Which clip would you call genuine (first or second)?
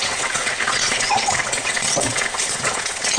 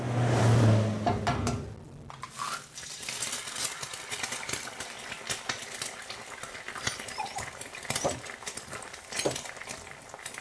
second